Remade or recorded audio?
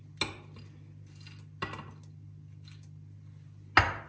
recorded